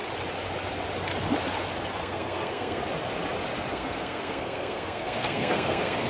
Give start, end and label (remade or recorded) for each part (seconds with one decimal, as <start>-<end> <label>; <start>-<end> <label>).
0.0-2.0 recorded; 2.0-2.8 remade; 2.8-3.7 recorded; 3.7-6.1 remade